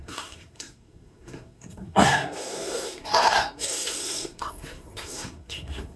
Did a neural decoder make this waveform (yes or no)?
yes